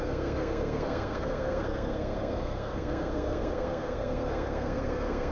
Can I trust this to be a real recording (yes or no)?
no